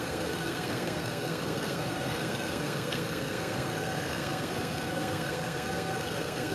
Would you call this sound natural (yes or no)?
no